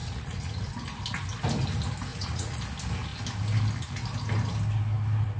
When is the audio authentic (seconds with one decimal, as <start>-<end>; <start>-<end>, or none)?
0.7-2.1; 2.6-5.4